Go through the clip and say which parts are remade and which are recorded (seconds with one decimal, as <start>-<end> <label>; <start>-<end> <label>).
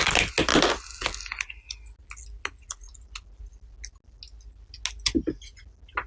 0.0-6.1 recorded